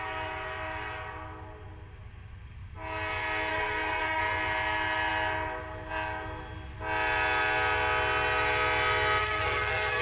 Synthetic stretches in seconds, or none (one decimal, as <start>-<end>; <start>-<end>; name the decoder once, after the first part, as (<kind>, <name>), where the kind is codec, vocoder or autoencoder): 3.5-4.2 (codec, SNAC); 9.2-10.0